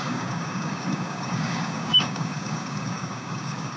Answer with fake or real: fake